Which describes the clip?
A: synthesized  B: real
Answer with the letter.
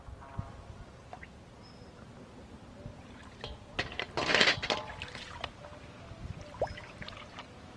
B